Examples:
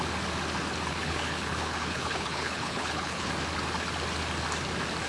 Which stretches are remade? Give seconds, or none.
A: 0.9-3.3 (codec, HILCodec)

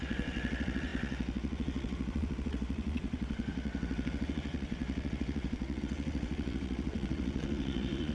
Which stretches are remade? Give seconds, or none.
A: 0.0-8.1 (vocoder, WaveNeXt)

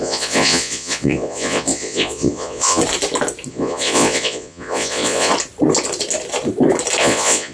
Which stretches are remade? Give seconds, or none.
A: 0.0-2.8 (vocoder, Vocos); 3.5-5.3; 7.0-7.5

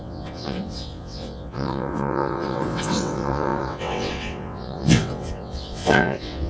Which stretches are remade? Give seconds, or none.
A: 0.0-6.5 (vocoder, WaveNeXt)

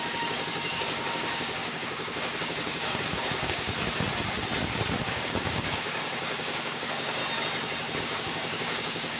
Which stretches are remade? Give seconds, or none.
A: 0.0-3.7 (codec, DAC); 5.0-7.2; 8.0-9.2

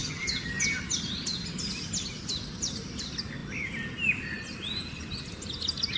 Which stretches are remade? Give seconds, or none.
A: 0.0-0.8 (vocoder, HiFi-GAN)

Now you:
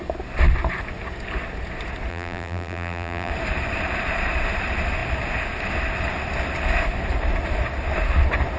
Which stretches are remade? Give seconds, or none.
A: 2.1-3.3 (vocoder, BigVGAN v2)